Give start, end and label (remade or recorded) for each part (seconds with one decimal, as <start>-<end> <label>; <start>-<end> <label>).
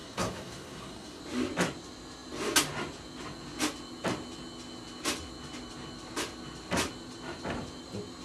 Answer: 0.0-1.2 remade; 1.2-8.2 recorded